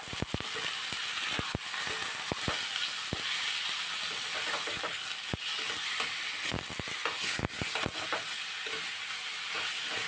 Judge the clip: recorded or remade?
recorded